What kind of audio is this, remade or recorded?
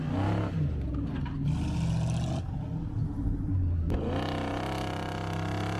recorded